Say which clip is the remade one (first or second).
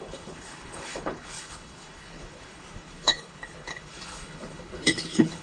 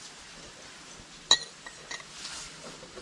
first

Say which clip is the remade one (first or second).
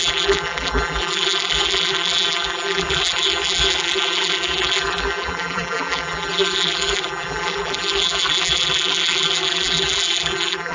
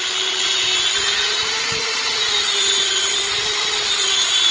first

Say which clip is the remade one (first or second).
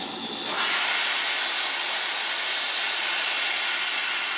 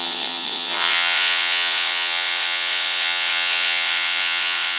second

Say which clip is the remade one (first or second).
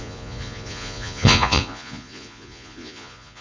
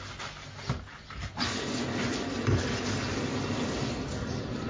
first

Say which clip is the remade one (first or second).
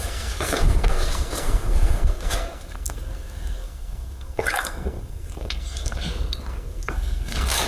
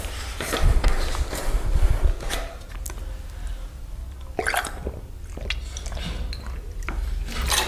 first